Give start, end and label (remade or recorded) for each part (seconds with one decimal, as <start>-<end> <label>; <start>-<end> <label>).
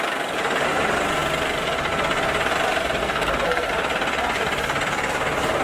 0.0-3.0 recorded; 3.0-3.7 remade; 3.7-5.6 recorded